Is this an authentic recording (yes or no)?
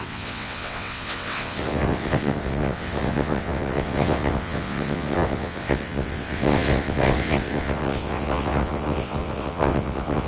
no